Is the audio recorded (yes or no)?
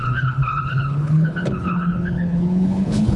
no